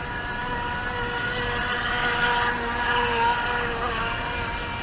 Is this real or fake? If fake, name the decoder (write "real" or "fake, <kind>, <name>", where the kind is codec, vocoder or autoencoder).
real